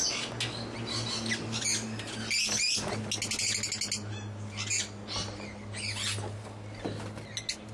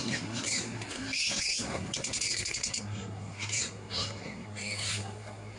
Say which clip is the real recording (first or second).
first